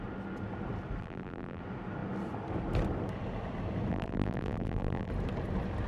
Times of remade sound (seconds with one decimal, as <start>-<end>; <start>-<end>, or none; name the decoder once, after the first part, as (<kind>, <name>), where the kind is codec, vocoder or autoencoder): 1.0-1.6 (vocoder, BigVGAN v2); 3.9-5.1